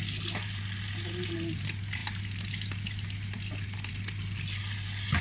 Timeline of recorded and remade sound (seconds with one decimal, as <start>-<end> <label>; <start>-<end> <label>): 0.0-5.2 recorded